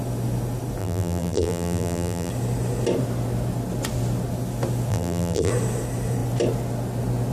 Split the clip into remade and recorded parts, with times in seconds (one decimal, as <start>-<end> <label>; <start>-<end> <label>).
0.0-0.8 recorded; 0.8-2.3 remade; 2.3-4.9 recorded; 4.9-5.5 remade; 5.5-7.3 recorded